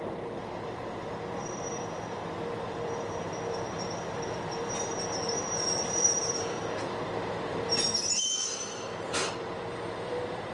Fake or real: fake